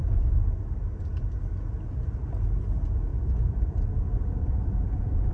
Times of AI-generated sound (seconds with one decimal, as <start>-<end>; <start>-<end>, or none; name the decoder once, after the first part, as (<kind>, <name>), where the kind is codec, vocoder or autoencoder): 0.0-0.5 (vocoder, Vocos); 3.1-5.3